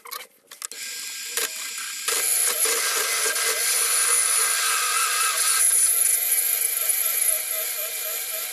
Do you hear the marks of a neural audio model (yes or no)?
no